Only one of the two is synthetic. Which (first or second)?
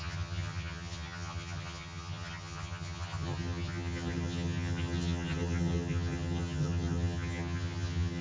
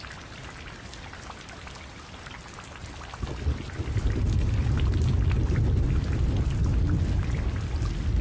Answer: first